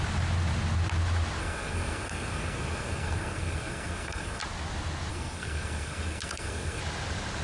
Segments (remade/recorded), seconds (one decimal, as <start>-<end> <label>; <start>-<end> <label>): 0.0-1.4 recorded; 1.4-4.4 remade; 4.4-5.1 recorded; 5.1-6.8 remade; 6.8-7.4 recorded